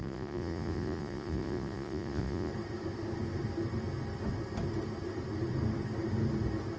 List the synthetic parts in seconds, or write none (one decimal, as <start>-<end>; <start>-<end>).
0.0-2.5